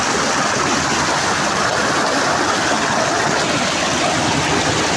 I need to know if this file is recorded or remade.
recorded